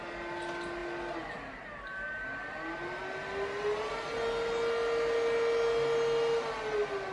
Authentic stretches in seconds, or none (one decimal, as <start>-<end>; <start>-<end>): 0.0-7.1